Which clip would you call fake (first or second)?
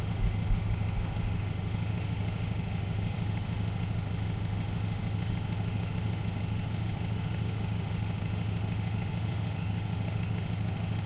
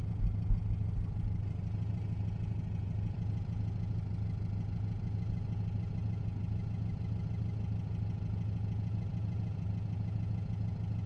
first